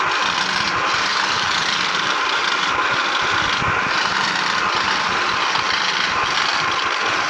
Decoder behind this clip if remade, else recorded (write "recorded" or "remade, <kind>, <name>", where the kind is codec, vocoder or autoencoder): recorded